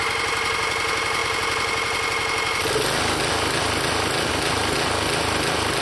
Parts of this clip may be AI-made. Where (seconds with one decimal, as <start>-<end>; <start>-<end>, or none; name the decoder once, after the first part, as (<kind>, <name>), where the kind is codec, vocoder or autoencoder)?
none